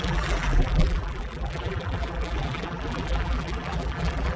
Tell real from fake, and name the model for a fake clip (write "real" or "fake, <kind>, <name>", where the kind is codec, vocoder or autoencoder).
fake, vocoder, BigVGAN v2